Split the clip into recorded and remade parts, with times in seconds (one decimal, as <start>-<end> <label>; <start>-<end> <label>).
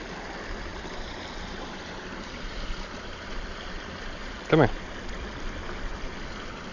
0.0-0.7 recorded; 0.7-4.5 remade; 4.5-6.7 recorded